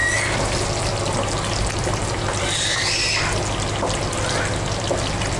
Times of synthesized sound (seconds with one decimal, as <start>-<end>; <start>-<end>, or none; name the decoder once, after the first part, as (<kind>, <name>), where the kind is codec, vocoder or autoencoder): none